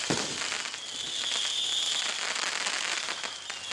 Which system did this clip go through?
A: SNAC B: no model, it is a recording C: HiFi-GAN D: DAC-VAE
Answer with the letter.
B